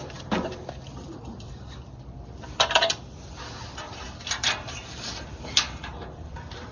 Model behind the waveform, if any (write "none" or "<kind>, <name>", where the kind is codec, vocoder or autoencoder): vocoder, BigVGAN v2